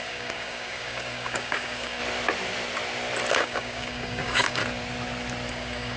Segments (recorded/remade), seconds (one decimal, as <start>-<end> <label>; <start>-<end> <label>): 0.0-2.0 remade; 2.0-3.3 recorded; 3.3-4.6 remade; 4.6-5.5 recorded; 5.5-6.0 remade